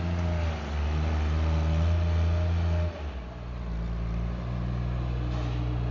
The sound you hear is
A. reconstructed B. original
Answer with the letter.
B